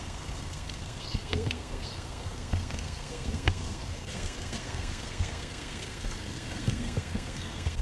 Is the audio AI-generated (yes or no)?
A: yes